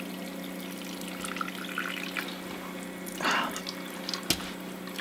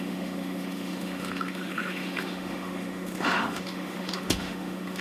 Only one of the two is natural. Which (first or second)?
first